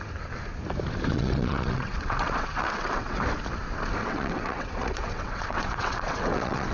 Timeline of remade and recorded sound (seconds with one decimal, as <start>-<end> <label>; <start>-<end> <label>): 0.0-1.1 recorded; 1.1-3.2 remade; 3.2-4.0 recorded; 4.0-6.7 remade